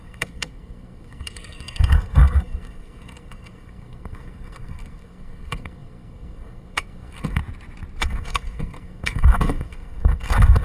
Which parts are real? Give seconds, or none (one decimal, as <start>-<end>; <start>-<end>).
7.4-8.0